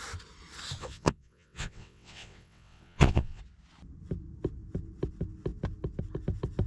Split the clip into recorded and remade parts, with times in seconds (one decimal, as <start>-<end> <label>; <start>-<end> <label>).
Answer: 0.0-0.8 recorded; 0.8-3.4 remade; 3.4-6.7 recorded